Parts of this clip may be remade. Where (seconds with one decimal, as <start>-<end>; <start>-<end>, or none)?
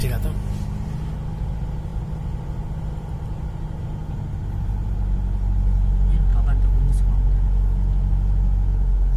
none